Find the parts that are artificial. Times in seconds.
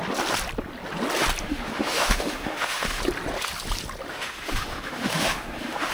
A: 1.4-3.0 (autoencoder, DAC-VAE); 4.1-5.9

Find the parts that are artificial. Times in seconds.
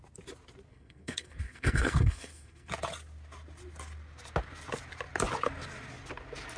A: 0.7-2.7 (codec, SNAC)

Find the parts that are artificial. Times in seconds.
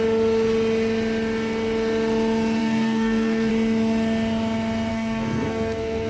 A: 2.6-3.5 (codec, SNAC); 4.9-6.1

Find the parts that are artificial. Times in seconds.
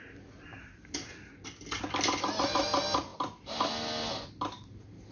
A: none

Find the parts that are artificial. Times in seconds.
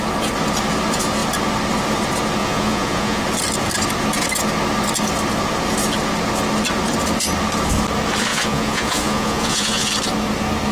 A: 2.4-3.2 (vocoder, Vocos); 8.3-9.9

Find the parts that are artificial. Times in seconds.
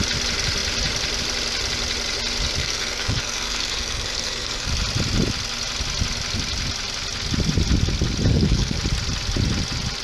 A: 2.6-4.7 (codec, SNAC); 8.3-8.8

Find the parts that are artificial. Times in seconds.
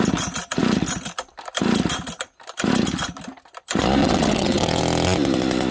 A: 4.0-4.8 (vocoder, WaveNeXt)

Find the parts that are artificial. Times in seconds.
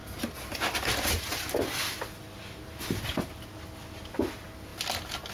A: none